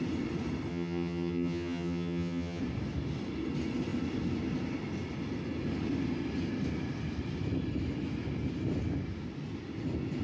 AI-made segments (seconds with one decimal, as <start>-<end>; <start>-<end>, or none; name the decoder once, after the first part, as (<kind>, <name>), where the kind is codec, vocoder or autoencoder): 0.7-2.6 (vocoder, HiFi-GAN)